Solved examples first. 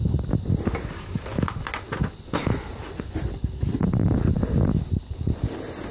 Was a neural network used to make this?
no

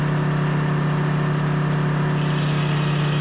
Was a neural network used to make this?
no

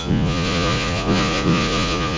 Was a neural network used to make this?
yes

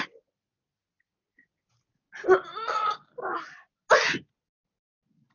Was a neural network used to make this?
no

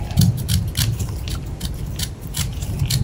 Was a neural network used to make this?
no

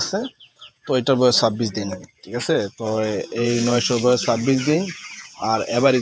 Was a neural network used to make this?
yes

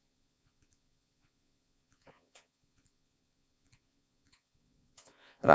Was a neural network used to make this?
yes